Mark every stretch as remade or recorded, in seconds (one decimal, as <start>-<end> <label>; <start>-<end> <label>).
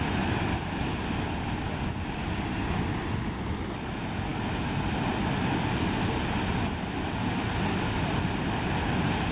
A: 0.0-9.3 recorded